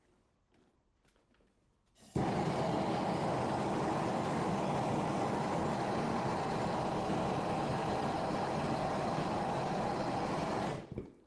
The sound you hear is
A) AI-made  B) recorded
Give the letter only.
B